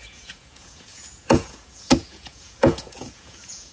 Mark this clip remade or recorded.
remade